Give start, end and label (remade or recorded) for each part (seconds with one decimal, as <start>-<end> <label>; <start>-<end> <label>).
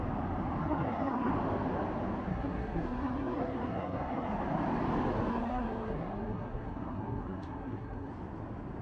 0.0-0.6 recorded; 0.6-1.3 remade; 1.3-2.3 recorded; 2.3-4.4 remade; 4.4-5.3 recorded; 5.3-8.1 remade; 8.1-8.8 recorded